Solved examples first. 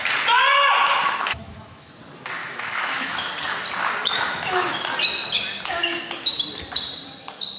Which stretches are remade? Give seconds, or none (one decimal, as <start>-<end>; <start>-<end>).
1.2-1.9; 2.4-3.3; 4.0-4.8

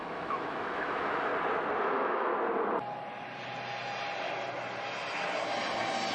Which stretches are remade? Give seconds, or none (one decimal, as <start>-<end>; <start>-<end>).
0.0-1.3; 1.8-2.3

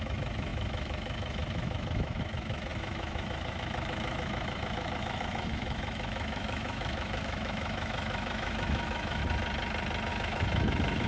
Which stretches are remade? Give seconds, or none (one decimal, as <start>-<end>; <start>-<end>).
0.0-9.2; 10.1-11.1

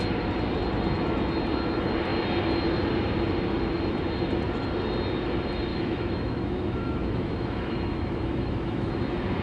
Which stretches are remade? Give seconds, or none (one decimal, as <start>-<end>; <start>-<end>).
5.7-8.9